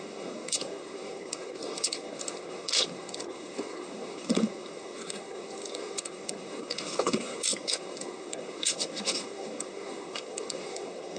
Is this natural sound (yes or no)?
no